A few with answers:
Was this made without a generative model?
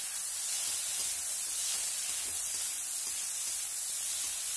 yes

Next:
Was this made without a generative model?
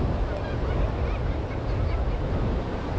yes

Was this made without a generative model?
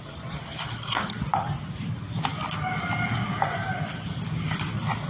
yes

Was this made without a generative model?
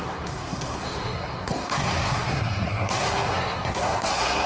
no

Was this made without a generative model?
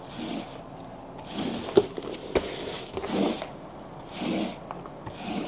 yes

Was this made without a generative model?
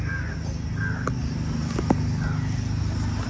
yes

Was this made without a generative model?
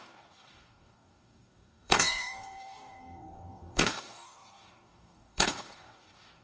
no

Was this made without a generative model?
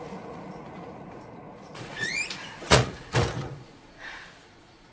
no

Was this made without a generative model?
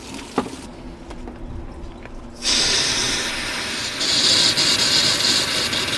yes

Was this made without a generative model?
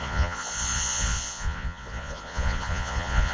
no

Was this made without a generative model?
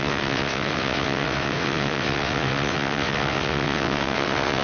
no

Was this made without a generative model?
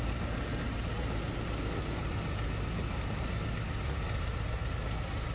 yes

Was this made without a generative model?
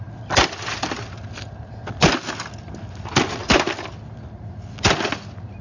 yes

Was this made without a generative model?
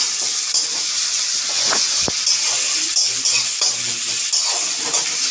yes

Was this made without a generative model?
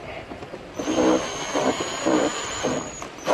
yes